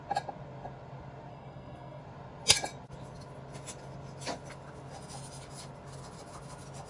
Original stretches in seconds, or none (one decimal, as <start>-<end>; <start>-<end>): 0.0-1.3; 2.0-6.9